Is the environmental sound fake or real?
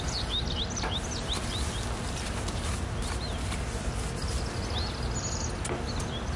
real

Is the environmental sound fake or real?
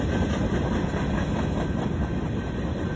real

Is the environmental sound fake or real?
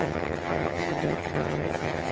fake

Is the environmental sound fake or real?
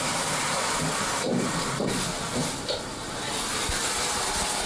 real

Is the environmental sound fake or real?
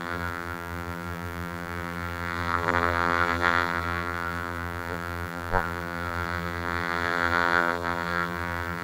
fake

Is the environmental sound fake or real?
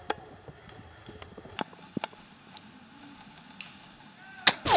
real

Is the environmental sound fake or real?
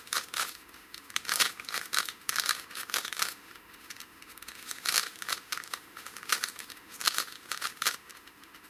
fake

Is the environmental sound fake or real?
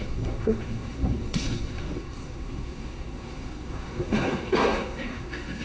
fake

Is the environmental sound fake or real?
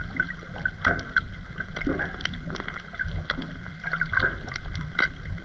real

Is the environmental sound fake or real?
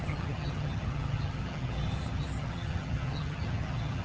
fake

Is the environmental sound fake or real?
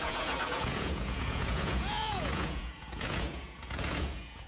fake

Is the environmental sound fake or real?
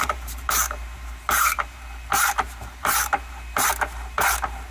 fake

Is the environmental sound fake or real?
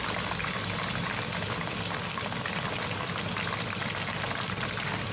real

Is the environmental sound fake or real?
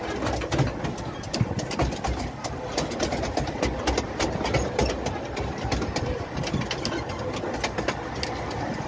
real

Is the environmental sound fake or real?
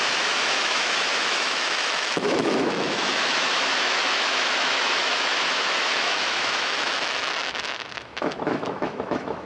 fake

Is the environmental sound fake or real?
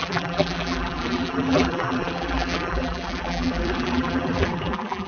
fake